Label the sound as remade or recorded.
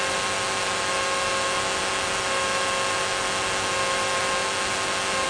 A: recorded